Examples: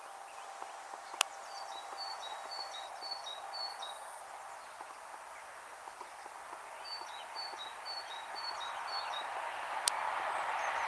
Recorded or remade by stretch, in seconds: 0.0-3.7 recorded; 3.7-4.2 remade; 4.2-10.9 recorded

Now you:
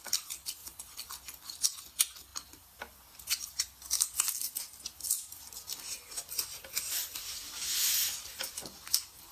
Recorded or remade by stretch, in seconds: 0.0-0.6 recorded; 0.6-1.1 remade; 1.1-2.3 recorded; 2.3-3.0 remade; 3.0-9.3 recorded

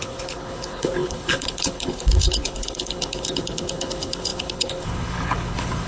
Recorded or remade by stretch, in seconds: 0.0-5.9 remade

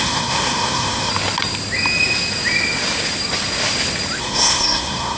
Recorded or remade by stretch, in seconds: 0.0-1.1 remade; 1.1-4.2 recorded; 4.2-5.2 remade